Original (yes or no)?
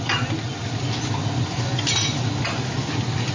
yes